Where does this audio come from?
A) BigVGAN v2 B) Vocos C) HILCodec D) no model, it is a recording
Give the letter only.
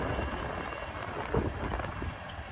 A